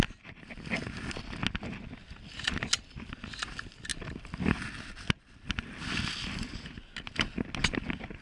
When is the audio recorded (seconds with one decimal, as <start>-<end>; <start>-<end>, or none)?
0.0-8.2